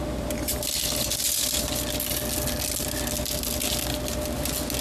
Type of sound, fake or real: real